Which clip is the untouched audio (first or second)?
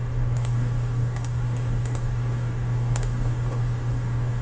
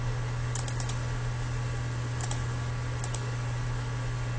second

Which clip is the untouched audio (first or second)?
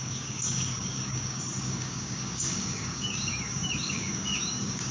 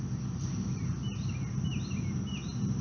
second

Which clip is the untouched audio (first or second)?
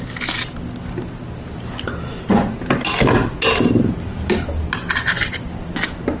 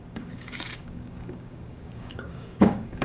first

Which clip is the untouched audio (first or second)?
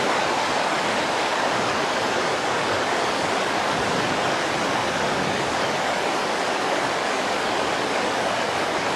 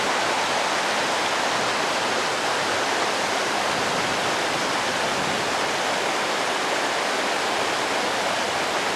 second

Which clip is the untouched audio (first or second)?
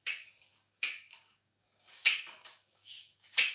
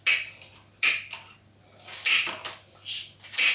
second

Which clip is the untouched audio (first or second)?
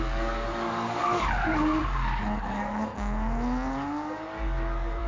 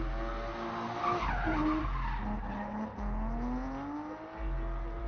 second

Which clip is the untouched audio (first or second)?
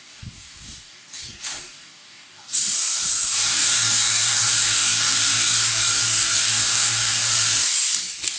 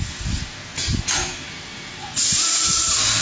second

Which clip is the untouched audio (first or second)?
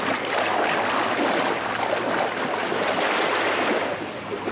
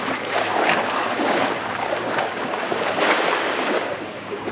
first